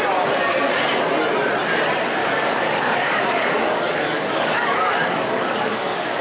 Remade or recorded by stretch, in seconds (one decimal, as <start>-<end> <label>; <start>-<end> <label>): 0.0-2.2 recorded; 2.2-6.2 remade